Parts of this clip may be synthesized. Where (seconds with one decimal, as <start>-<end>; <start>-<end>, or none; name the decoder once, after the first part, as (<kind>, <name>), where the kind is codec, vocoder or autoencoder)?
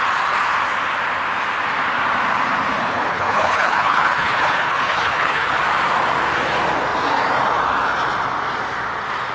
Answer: 2.8-5.5 (codec, HILCodec)